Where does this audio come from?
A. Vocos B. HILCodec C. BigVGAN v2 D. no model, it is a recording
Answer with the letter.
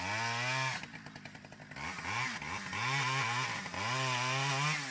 D